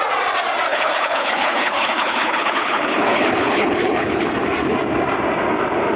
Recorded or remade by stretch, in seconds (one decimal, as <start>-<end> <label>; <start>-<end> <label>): 0.0-0.7 recorded; 0.7-4.3 remade; 4.3-6.0 recorded